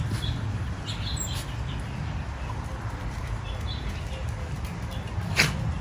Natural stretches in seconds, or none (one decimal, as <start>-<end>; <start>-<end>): 0.0-5.8